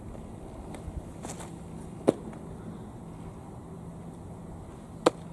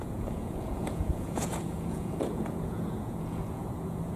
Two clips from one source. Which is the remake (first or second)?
second